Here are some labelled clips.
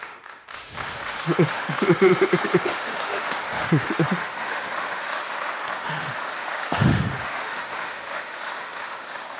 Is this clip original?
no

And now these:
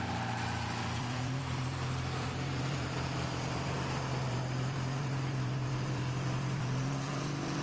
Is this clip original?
no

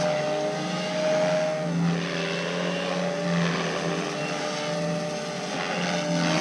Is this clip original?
yes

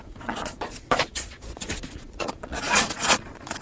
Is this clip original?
no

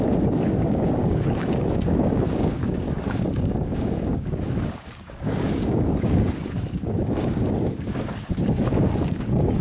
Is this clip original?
no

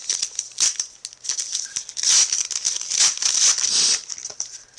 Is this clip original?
yes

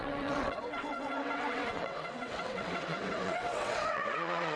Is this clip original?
no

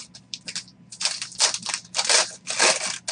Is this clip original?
yes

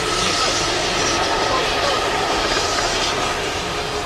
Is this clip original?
yes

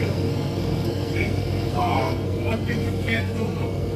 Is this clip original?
no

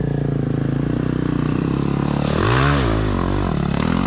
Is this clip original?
yes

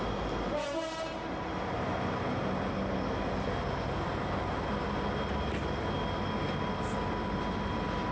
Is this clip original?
yes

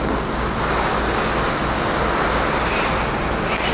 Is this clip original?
yes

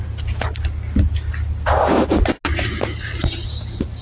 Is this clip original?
yes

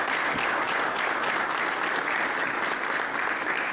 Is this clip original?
yes